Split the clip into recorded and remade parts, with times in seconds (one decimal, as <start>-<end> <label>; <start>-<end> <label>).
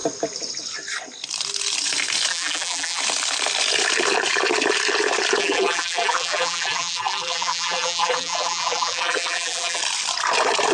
0.0-2.3 recorded; 2.3-3.0 remade; 3.0-5.4 recorded; 5.4-9.8 remade; 9.8-10.7 recorded